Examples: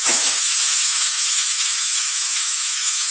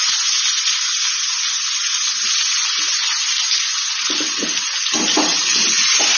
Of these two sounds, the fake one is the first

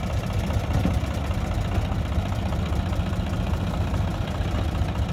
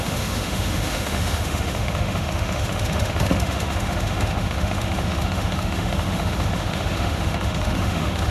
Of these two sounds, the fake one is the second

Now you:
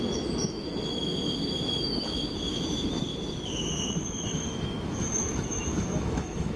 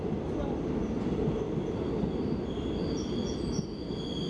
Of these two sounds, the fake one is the first